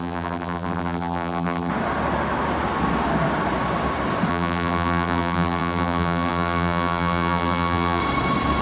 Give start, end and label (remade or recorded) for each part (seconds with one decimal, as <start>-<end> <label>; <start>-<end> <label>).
0.0-1.7 remade; 1.7-4.3 recorded; 4.3-8.0 remade; 8.0-8.6 recorded